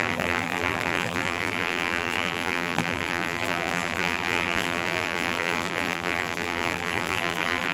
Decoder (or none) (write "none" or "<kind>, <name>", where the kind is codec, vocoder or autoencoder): vocoder, BigVGAN v2